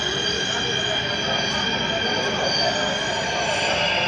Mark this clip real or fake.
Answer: real